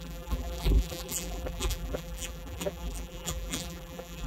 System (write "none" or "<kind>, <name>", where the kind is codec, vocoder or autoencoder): vocoder, BigVGAN v2